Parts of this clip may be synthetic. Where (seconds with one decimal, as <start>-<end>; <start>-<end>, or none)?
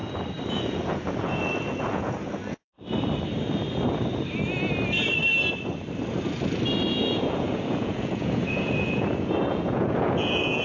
0.5-2.7; 6.9-10.6